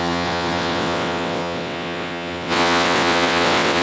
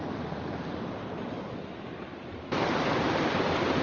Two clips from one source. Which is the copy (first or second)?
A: first